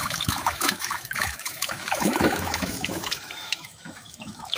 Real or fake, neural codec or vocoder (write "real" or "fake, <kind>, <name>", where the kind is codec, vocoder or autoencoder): fake, autoencoder, DAC-VAE